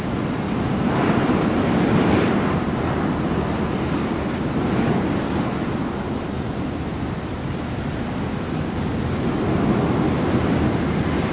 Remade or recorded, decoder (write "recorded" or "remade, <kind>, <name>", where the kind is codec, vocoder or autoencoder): recorded